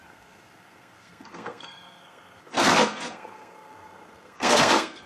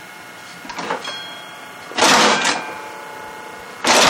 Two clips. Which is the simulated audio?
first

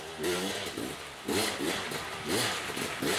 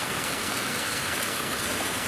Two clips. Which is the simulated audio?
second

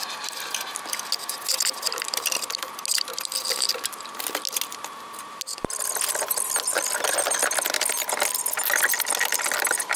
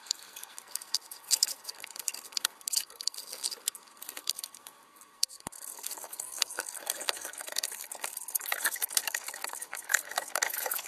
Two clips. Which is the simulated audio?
second